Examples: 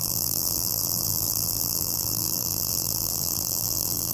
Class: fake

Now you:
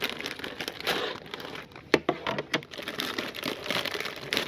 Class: fake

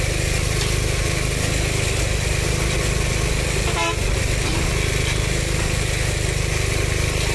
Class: real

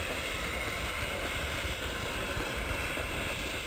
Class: fake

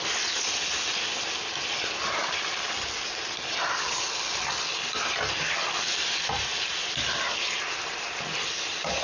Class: real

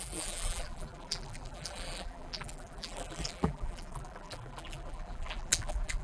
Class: fake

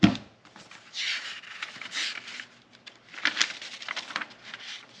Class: real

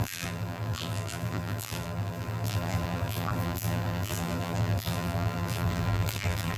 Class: fake